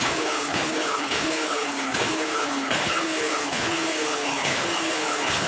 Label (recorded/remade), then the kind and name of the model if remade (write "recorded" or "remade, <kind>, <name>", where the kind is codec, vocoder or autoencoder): remade, codec, HILCodec